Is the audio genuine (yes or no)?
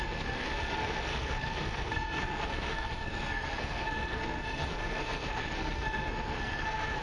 no